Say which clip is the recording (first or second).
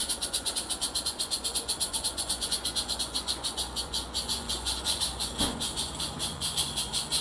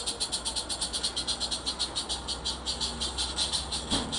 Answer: second